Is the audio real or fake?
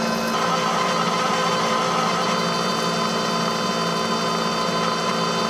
real